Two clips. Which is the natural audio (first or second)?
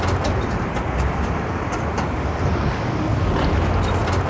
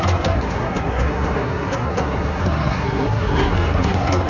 first